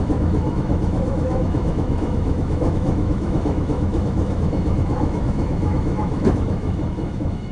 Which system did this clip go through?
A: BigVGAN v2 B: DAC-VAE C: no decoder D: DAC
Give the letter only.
B